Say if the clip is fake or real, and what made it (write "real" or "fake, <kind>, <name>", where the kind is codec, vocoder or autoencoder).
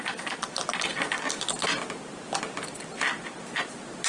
real